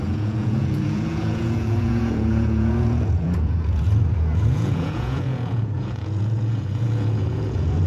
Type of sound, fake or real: fake